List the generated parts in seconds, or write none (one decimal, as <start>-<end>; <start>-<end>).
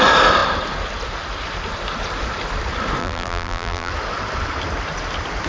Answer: 3.0-3.9